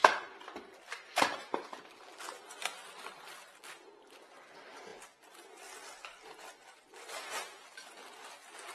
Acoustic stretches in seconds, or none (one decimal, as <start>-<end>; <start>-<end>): 4.1-4.9; 7.3-8.7